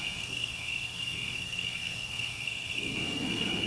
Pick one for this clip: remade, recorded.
remade